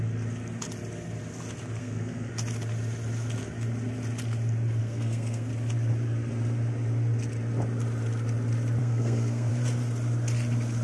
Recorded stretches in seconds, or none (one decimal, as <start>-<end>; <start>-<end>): 0.0-1.8; 2.3-4.8; 5.5-8.8; 9.5-10.8